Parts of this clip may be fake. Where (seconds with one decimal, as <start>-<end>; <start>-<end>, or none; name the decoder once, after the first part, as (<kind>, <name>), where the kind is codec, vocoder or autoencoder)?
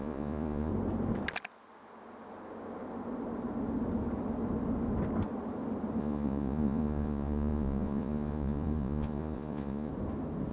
0.0-0.7 (vocoder, Vocos); 6.0-9.9